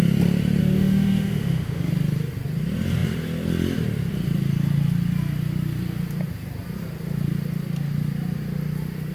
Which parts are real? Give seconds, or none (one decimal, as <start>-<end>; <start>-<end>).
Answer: 0.0-0.6; 1.9-9.1